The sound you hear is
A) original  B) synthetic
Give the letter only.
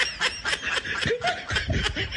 A